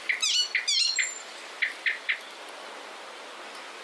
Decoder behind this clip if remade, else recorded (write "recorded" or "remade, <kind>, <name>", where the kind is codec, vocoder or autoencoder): recorded